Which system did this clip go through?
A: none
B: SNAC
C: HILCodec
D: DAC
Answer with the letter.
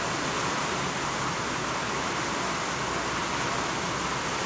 A